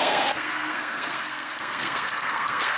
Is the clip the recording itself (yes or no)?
no